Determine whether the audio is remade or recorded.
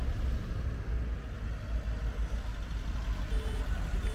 recorded